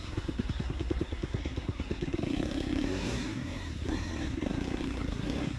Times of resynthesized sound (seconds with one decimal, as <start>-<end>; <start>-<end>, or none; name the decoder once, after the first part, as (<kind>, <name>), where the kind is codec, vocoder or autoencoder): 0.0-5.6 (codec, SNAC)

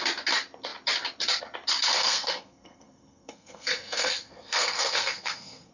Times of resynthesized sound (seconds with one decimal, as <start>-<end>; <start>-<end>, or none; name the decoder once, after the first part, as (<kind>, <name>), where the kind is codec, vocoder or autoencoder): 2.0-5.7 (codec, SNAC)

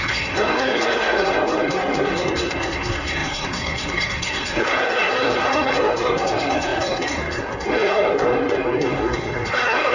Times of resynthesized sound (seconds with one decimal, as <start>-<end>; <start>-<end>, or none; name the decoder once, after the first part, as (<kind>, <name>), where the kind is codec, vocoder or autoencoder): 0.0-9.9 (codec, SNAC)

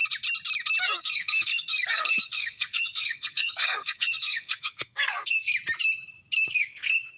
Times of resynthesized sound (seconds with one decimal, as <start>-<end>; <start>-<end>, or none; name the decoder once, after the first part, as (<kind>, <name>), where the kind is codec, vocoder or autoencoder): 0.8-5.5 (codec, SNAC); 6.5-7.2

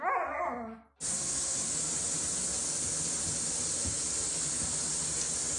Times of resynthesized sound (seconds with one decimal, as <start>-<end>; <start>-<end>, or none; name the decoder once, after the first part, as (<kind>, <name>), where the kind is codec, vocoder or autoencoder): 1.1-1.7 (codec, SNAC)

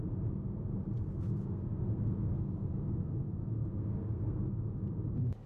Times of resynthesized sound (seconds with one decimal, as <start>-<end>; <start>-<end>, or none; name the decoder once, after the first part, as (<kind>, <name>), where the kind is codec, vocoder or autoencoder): 1.1-4.4 (codec, SNAC)